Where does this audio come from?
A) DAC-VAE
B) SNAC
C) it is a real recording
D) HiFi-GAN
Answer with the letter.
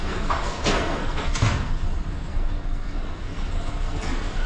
B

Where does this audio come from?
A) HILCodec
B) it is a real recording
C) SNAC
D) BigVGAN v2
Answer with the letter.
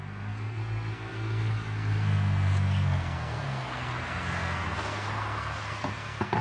C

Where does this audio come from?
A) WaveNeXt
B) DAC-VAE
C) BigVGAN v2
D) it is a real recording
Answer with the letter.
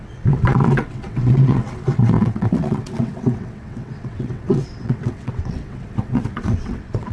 A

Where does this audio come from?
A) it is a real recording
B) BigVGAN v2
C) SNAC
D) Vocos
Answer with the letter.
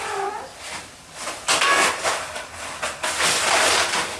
A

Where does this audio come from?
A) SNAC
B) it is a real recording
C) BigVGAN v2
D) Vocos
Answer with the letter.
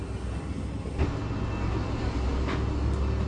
B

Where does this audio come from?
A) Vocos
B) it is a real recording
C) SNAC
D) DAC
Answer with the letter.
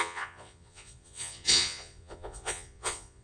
A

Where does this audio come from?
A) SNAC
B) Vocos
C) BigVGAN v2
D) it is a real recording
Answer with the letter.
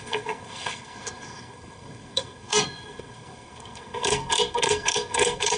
A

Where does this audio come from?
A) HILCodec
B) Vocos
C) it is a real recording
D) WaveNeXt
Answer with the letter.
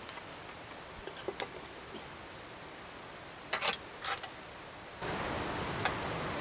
C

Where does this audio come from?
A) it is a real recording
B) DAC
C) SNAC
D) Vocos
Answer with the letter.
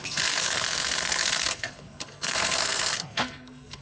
C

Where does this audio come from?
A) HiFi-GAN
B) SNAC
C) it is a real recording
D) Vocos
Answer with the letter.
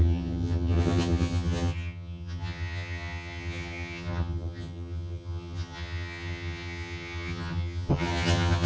A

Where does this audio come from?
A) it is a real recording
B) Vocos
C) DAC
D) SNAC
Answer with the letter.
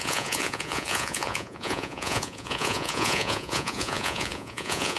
B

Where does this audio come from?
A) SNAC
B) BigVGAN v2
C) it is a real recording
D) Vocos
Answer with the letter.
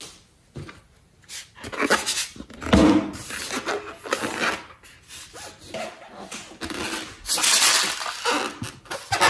C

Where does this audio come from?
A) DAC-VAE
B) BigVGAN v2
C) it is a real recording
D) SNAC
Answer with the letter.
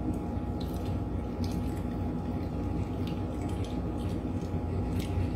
C